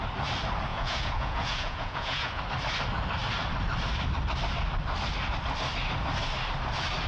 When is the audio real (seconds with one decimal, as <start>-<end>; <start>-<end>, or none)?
0.0-0.7; 2.4-7.1